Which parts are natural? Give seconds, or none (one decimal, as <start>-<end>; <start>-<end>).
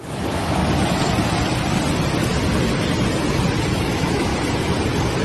0.6-3.7; 4.3-5.2